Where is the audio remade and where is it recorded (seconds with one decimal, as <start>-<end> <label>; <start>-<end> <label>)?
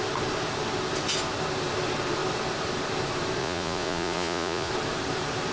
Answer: 0.0-3.4 recorded; 3.4-4.7 remade; 4.7-5.5 recorded